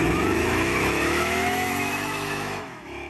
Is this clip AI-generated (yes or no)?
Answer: yes